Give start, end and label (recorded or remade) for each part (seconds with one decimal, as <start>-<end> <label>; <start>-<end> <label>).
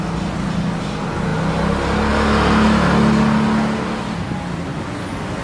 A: 0.0-5.4 recorded